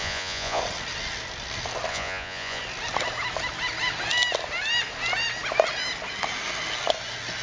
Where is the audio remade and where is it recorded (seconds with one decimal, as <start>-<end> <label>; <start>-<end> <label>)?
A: 0.0-0.6 remade; 0.6-1.9 recorded; 1.9-2.6 remade; 2.6-7.4 recorded

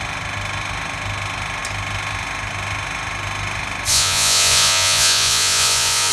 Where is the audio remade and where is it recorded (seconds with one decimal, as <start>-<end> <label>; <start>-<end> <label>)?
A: 0.0-3.9 recorded; 3.9-6.1 remade

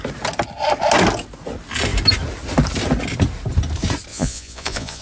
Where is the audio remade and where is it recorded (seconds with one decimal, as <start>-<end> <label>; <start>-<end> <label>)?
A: 0.0-4.1 recorded; 4.1-5.0 remade

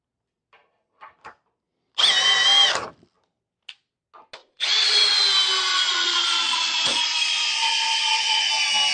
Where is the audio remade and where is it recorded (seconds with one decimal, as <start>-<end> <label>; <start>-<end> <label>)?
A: 0.0-4.4 recorded; 4.4-5.1 remade; 5.1-5.7 recorded; 5.7-8.5 remade; 8.5-8.9 recorded

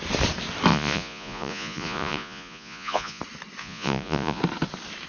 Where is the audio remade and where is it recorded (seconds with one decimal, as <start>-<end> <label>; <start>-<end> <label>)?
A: 0.0-0.7 recorded; 0.7-3.2 remade; 3.2-3.6 recorded; 3.6-4.4 remade; 4.4-5.1 recorded